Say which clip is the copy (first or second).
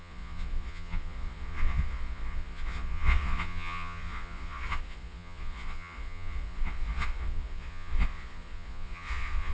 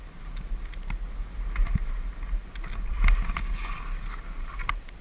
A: first